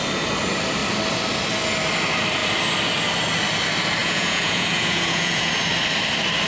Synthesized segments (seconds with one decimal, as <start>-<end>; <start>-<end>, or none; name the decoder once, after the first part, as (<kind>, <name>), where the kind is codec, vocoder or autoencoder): 4.0-5.5 (vocoder, Vocos)